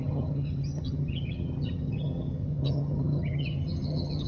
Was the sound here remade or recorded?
remade